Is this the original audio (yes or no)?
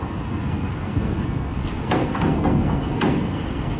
no